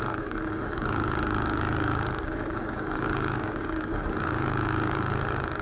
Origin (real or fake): fake